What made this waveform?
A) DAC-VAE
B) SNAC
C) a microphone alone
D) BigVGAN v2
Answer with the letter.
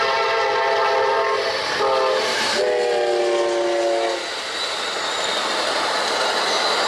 C